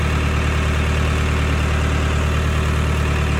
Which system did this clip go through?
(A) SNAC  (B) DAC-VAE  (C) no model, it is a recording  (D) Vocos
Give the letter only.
C